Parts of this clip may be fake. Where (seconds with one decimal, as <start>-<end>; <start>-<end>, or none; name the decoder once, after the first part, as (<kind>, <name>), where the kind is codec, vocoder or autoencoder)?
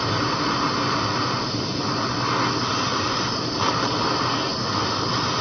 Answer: 2.9-3.9 (vocoder, BigVGAN v2)